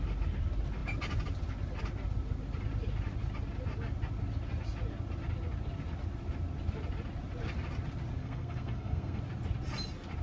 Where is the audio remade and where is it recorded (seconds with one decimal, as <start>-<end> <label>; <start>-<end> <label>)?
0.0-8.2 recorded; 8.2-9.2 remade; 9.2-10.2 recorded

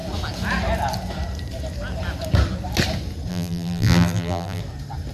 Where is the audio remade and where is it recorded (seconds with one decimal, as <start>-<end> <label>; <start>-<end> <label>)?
0.0-3.3 recorded; 3.3-4.6 remade; 4.6-5.1 recorded

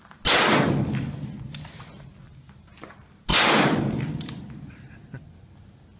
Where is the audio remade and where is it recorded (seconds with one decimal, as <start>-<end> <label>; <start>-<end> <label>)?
0.0-6.0 recorded